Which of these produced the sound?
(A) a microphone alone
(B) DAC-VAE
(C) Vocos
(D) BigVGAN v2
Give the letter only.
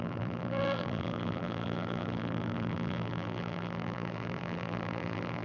D